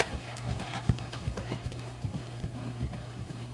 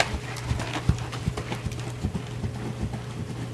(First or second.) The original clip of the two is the second